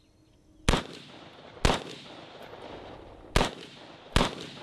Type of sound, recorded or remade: recorded